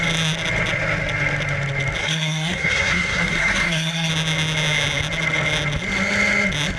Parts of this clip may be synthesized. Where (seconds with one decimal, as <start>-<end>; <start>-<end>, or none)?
2.0-4.1